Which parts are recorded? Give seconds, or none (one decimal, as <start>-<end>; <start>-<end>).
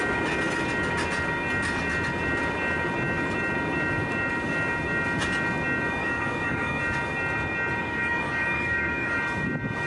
0.0-6.0; 6.8-7.8; 9.2-9.9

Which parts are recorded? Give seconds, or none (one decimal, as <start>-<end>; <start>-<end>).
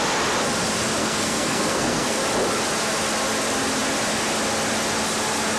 0.0-1.0; 2.2-5.6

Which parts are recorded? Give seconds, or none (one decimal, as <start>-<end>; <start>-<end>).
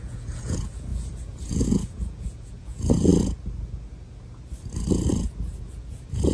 3.1-5.6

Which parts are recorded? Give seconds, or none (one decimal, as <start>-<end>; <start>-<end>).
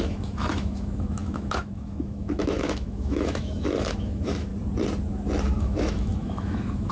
4.5-5.6